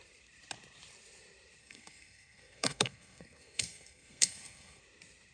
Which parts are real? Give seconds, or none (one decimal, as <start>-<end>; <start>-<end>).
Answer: 0.0-1.6; 4.8-5.3